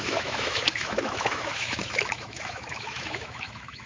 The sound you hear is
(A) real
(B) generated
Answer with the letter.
B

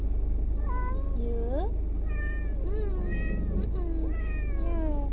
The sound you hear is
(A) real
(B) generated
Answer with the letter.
A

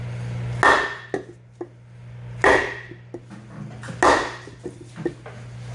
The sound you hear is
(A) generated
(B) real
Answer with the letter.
B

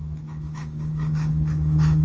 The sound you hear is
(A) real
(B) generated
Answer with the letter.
B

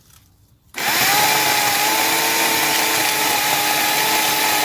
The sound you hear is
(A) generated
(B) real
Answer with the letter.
B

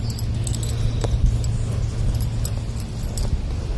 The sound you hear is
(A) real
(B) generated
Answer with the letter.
A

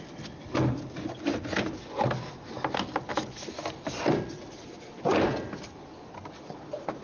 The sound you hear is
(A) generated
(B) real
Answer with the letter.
B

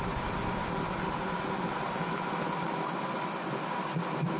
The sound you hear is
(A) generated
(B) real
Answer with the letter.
B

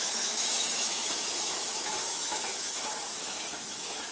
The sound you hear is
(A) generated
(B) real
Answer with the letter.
A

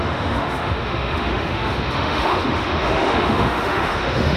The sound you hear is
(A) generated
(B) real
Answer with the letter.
A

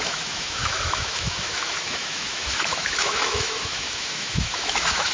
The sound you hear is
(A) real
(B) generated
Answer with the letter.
B